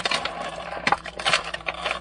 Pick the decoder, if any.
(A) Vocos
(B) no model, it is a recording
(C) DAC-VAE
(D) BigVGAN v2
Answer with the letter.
D